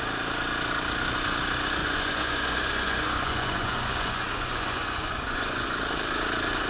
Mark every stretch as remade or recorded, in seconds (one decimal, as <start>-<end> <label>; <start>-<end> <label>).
0.0-1.8 recorded; 1.8-5.8 remade; 5.8-6.7 recorded